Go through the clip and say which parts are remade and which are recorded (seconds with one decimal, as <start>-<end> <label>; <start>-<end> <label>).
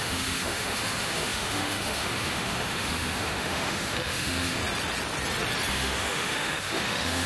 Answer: 0.0-4.6 remade; 4.6-5.7 recorded; 5.7-7.3 remade